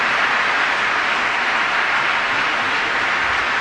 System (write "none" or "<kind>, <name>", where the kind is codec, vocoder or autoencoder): none